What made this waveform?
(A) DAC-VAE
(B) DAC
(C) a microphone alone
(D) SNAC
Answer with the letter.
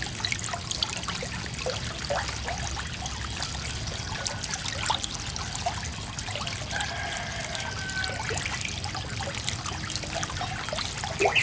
C